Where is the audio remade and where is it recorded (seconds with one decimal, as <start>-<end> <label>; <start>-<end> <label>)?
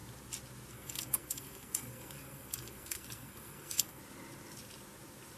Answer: 0.0-0.7 recorded; 0.7-4.0 remade; 4.0-5.4 recorded